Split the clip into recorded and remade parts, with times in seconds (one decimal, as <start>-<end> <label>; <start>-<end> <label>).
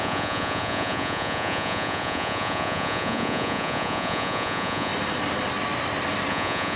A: 0.0-4.9 remade; 4.9-6.3 recorded; 6.3-6.8 remade